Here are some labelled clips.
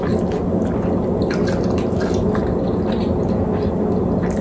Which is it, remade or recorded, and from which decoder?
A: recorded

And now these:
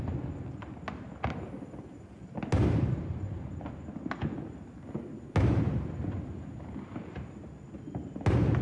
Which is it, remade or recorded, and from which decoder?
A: recorded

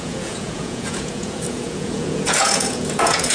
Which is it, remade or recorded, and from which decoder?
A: remade, vocoder, Vocos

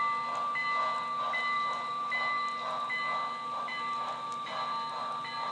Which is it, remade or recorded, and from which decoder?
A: recorded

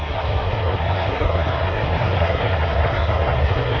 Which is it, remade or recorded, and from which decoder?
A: remade, codec, SNAC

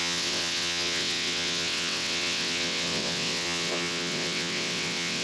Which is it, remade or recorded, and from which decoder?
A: remade, vocoder, WaveNeXt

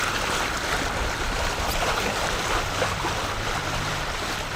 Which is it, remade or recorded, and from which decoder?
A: remade, vocoder, BigVGAN v2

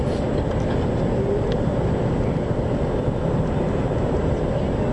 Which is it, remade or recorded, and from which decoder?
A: recorded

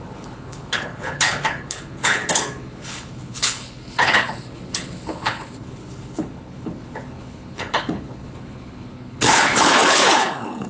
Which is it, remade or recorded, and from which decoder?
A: remade, codec, HILCodec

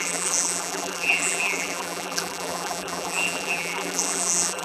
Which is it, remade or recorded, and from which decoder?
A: remade, vocoder, BigVGAN v2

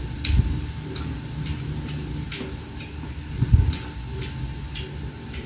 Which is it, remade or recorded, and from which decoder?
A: recorded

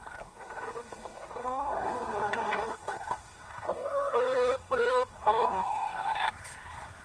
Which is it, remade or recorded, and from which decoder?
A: remade, codec, SNAC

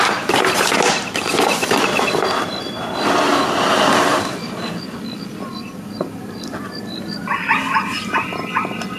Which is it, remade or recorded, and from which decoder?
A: recorded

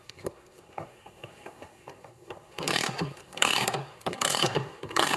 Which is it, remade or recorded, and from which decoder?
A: remade, codec, SNAC